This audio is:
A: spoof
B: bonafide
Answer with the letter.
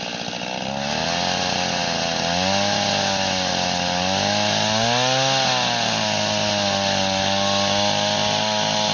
B